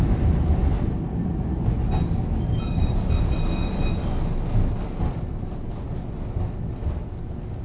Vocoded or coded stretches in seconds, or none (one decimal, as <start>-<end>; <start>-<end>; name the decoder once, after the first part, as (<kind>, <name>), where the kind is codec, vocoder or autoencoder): none